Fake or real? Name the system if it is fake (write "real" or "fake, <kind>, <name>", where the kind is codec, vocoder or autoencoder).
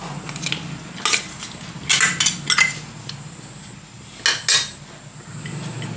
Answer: real